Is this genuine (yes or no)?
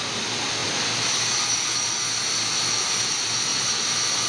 yes